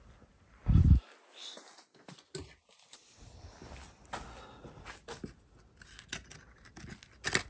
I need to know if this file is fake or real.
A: real